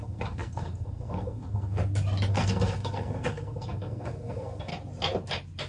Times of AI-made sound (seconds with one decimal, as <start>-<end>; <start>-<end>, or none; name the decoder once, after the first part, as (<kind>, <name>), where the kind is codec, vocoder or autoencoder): 0.0-1.8 (codec, SNAC); 2.3-4.7